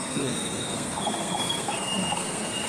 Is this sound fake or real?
fake